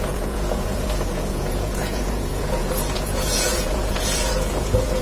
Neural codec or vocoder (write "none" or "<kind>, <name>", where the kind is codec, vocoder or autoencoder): vocoder, Vocos